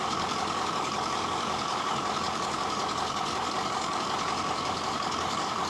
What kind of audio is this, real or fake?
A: fake